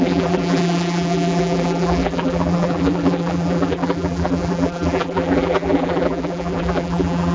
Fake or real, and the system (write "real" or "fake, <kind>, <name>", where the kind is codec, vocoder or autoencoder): fake, vocoder, BigVGAN v2